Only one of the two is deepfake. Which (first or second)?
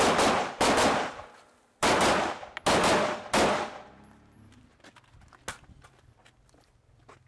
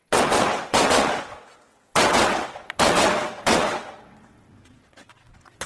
second